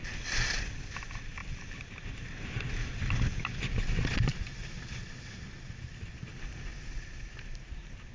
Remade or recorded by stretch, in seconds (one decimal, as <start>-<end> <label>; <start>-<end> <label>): 0.0-8.1 recorded